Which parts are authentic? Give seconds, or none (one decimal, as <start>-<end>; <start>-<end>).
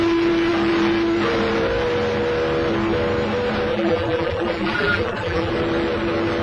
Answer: 0.0-3.7; 5.5-6.4